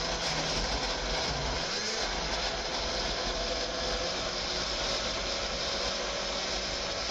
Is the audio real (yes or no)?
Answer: yes